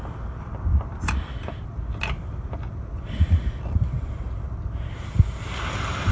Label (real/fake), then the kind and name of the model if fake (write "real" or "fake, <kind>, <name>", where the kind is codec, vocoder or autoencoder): real